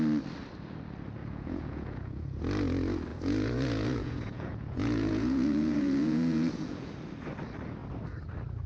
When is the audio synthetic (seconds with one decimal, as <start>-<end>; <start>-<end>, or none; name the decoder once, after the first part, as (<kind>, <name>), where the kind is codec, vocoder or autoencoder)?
1.2-2.4 (vocoder, Vocos); 3.1-6.9